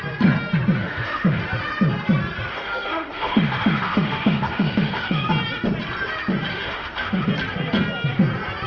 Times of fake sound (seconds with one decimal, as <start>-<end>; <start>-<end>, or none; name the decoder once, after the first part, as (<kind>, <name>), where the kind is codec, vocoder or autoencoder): 0.8-1.4 (autoencoder, DAC-VAE); 2.5-5.3; 6.5-7.3